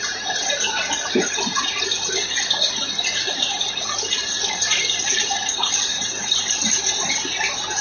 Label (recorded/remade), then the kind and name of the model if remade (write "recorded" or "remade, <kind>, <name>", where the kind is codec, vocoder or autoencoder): remade, vocoder, BigVGAN v2